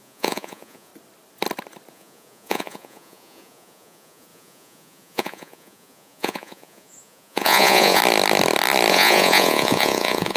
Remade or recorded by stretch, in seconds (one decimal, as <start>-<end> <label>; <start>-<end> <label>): 0.0-0.9 remade; 0.9-1.9 recorded; 1.9-8.0 remade; 8.0-8.9 recorded; 8.9-10.4 remade